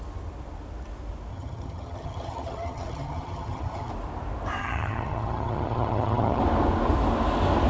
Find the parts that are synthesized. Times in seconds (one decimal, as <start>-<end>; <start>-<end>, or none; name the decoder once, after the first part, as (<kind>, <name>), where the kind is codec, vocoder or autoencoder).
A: 1.3-3.9 (vocoder, HiFi-GAN); 4.6-6.4